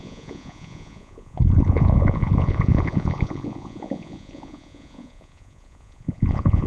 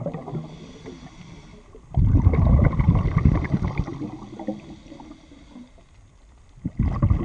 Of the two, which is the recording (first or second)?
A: second